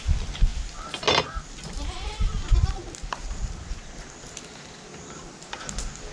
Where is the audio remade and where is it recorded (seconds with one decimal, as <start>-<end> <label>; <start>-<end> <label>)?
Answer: 0.0-6.1 recorded